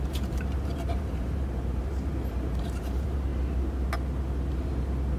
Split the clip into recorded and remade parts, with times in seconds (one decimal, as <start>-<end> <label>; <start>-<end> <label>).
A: 0.0-3.3 remade; 3.3-5.2 recorded